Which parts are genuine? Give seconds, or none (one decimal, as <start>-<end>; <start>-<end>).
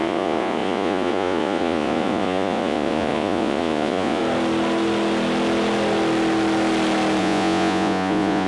4.2-7.2